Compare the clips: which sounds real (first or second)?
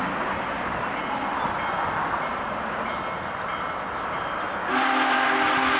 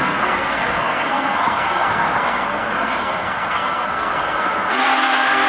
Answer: first